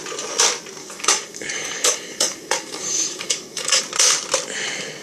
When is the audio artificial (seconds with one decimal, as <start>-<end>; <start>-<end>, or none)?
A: 0.8-3.8